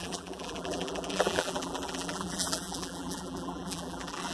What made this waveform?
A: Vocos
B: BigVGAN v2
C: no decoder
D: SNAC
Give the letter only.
B